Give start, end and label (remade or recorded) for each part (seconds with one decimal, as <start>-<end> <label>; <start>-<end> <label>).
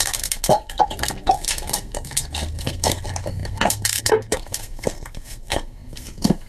0.0-6.5 remade